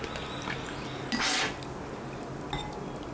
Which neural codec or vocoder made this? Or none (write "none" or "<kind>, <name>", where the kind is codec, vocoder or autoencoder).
none